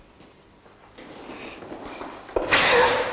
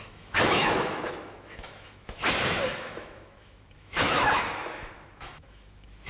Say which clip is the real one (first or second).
first